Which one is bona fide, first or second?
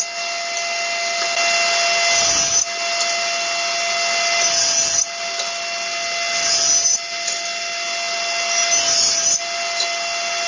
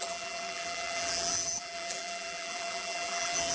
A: first